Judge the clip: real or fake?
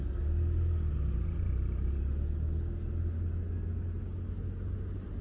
real